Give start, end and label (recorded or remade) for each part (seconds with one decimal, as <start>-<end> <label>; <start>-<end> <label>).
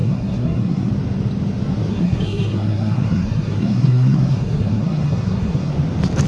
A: 0.0-0.9 remade; 0.9-1.9 recorded; 1.9-5.7 remade; 5.7-6.3 recorded